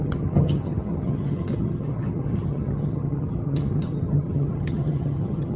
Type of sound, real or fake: fake